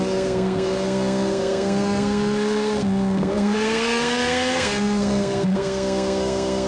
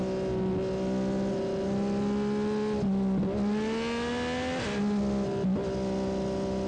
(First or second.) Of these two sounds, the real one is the second